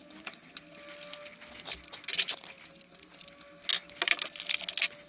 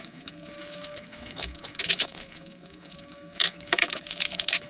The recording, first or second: first